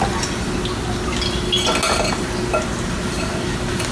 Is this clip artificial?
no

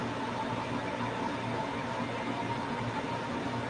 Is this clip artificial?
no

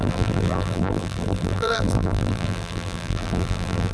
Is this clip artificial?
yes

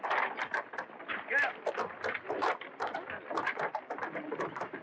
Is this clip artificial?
yes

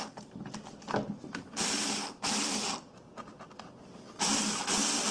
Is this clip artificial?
no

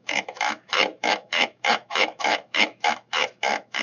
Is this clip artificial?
yes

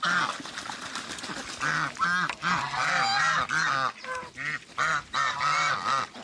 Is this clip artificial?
no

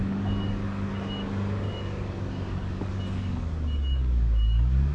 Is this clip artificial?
yes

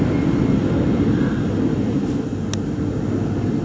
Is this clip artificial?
no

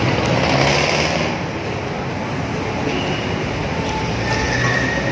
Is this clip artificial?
no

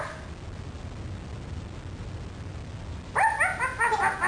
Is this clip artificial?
no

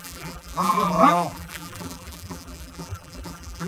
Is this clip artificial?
yes